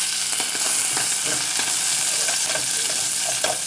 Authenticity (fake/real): real